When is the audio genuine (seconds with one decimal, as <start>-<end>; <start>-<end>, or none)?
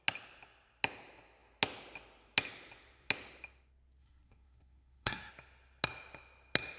0.0-4.0; 5.3-6.8